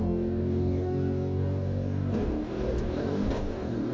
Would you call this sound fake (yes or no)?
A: yes